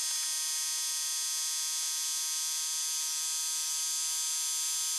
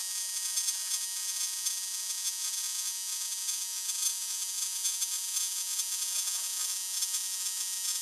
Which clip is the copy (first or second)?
second